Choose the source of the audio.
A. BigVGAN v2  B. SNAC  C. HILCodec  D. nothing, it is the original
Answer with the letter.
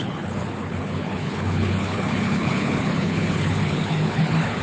C